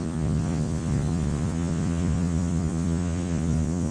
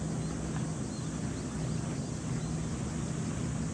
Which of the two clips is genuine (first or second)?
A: second